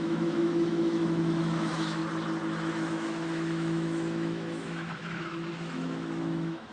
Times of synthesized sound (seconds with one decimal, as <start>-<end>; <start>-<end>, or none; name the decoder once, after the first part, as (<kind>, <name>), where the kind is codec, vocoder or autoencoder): 0.0-2.0 (autoencoder, DAC-VAE); 2.7-6.7